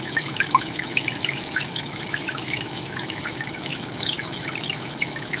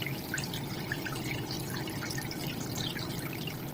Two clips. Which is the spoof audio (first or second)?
first